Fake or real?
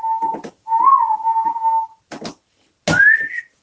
real